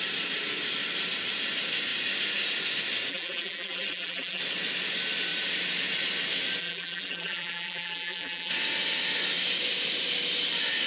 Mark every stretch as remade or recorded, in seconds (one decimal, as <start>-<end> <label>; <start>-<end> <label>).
0.0-3.1 recorded; 3.1-4.4 remade; 4.4-6.6 recorded; 6.6-8.5 remade; 8.5-10.9 recorded